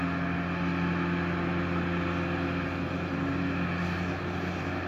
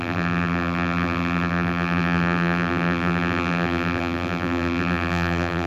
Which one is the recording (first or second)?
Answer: first